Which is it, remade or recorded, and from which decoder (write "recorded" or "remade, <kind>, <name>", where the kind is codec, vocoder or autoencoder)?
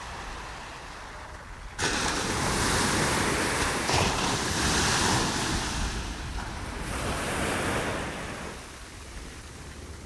recorded